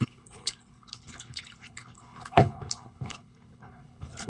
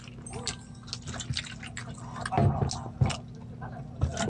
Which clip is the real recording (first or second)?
second